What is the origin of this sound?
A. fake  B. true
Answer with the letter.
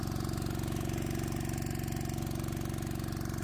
B